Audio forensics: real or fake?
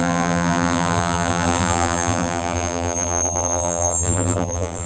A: fake